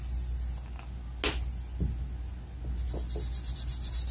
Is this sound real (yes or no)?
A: yes